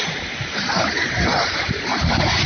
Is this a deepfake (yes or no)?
yes